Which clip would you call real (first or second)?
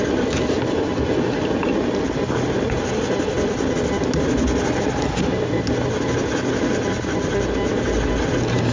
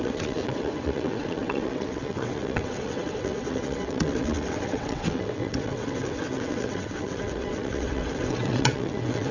first